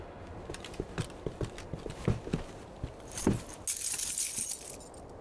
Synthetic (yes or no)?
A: no